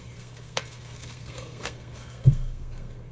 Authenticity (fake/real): fake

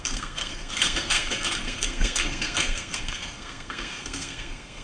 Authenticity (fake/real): fake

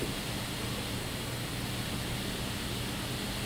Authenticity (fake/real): real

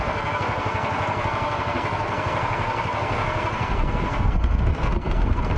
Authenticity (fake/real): fake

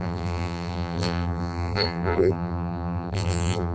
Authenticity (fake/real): fake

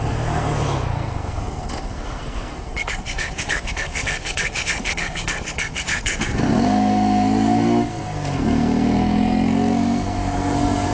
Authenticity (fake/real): fake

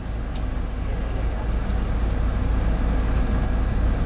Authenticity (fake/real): real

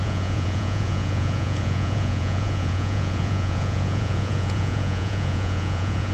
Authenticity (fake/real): fake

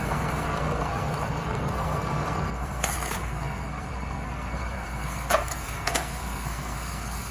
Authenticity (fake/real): fake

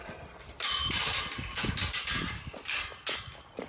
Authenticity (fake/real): real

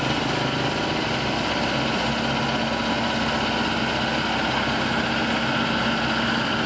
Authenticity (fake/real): real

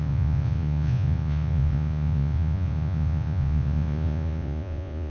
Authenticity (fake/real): fake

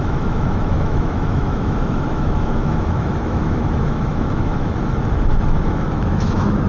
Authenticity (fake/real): fake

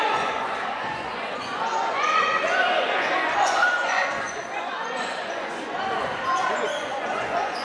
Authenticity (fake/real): fake